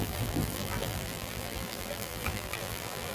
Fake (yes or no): yes